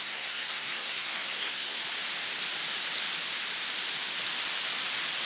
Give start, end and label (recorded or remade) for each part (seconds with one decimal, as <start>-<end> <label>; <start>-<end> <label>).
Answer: 0.0-1.8 remade; 1.8-5.3 recorded